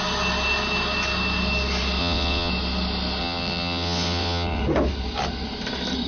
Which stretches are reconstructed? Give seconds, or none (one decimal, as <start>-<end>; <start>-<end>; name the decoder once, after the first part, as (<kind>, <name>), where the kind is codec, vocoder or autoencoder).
2.0-2.5 (vocoder, WaveNeXt); 3.2-4.6